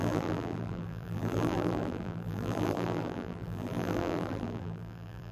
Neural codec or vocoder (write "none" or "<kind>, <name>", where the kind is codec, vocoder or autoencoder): vocoder, BigVGAN v2